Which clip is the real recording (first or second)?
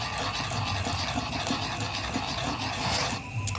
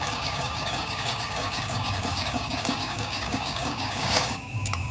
first